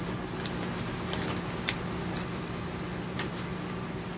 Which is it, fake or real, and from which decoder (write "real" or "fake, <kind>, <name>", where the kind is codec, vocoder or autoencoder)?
real